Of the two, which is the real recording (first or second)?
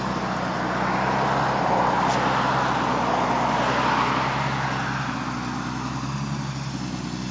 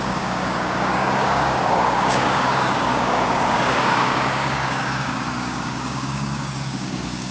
first